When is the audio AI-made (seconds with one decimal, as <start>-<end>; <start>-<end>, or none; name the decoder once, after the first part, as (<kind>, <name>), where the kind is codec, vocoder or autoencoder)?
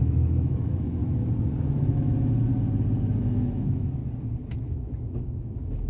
0.0-1.0 (autoencoder, DAC-VAE); 1.6-2.5; 3.2-4.0; 4.5-5.9